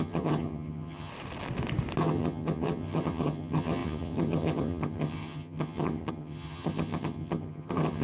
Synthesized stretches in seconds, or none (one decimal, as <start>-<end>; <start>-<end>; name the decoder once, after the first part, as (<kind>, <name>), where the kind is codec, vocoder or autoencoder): 0.0-1.1 (vocoder, HiFi-GAN); 2.0-8.0